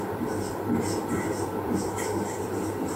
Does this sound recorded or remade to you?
remade